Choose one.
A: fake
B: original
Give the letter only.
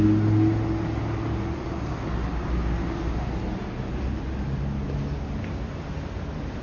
B